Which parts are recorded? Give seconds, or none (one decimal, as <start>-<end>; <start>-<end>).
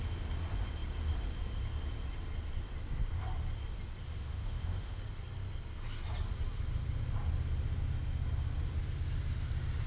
0.0-4.1; 5.0-9.9